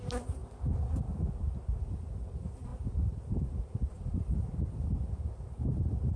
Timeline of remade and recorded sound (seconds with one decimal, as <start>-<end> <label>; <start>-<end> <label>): 0.0-0.4 remade; 0.4-1.0 recorded; 1.0-6.2 remade